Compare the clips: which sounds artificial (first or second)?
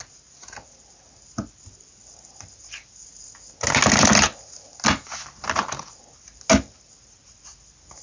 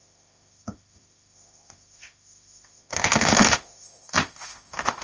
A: second